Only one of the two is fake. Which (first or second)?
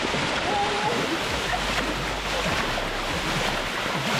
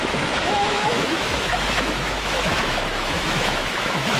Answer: second